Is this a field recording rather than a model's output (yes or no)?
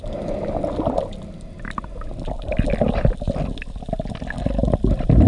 yes